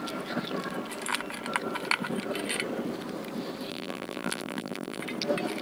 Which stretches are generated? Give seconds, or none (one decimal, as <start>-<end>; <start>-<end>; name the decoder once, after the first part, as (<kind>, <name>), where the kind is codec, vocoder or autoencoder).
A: 3.7-5.0 (vocoder, BigVGAN v2)